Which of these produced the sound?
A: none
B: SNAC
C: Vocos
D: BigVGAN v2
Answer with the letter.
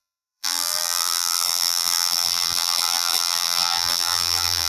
D